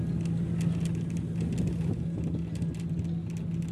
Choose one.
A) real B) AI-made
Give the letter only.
A